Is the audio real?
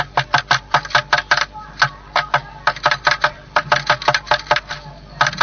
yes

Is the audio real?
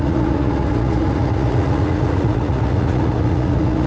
no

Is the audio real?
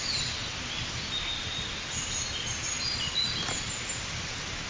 yes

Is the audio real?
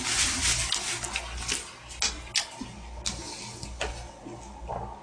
yes